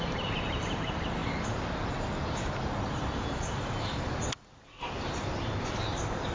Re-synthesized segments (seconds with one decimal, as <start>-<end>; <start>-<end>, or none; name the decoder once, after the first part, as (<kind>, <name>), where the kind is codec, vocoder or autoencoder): 0.0-1.2 (vocoder, BigVGAN v2); 5.0-6.3